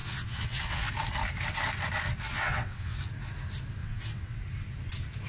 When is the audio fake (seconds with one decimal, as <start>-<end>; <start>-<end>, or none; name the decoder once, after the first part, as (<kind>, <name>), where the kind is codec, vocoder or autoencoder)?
0.0-0.9 (vocoder, WaveNeXt); 2.3-3.1; 3.8-4.4